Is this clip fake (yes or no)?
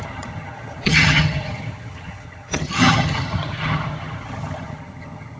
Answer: yes